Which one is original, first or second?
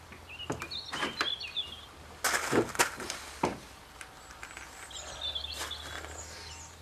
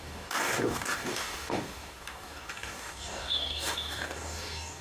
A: first